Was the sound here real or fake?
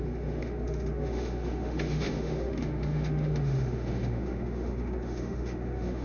fake